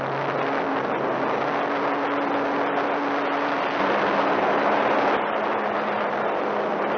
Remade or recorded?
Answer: recorded